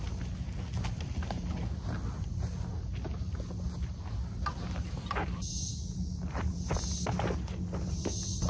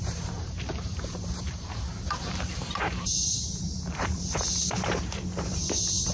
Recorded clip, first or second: first